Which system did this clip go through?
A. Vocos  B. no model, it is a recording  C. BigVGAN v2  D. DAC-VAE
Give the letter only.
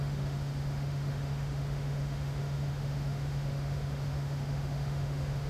D